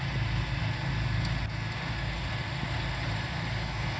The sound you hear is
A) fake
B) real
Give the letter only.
B